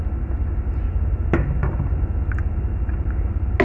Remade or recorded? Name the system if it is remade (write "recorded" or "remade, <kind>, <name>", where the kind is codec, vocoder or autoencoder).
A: recorded